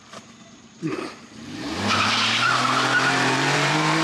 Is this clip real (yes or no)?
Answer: no